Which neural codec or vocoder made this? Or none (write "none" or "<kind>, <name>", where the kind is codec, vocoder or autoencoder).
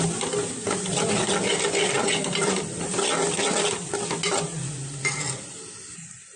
none